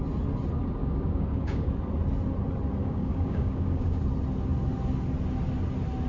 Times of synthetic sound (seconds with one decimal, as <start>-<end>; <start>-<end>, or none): 0.8-1.7; 2.8-4.0